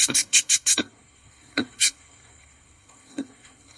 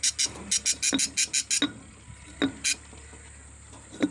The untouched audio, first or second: second